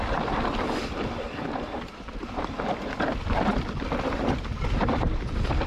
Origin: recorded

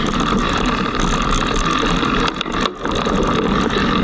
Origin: recorded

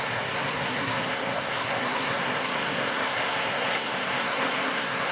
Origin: remade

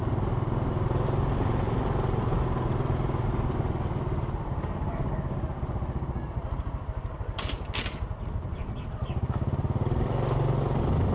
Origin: recorded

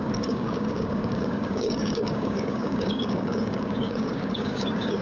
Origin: remade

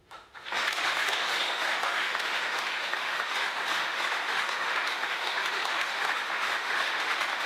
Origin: remade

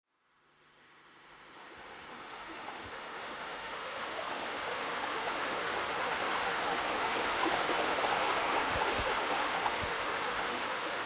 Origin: remade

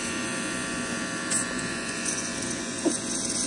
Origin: remade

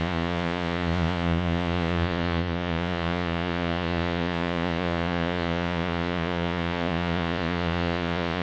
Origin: remade